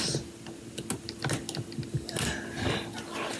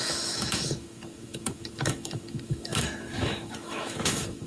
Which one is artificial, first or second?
second